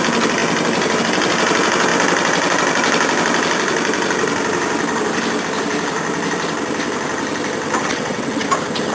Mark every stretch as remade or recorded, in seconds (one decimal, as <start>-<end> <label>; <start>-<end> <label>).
0.0-7.8 recorded; 7.8-8.4 remade; 8.4-8.9 recorded